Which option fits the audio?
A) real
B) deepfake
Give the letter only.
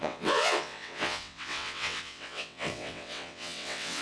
B